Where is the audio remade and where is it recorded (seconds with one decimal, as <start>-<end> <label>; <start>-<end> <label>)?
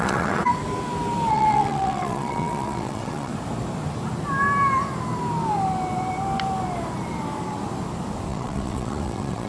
0.0-0.4 remade; 0.4-1.3 recorded; 1.3-3.3 remade; 3.3-8.3 recorded; 8.3-9.5 remade